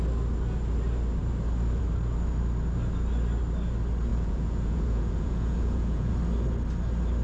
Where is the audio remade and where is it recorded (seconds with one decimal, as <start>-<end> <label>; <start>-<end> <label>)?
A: 0.0-4.1 recorded; 4.1-6.1 remade; 6.1-7.2 recorded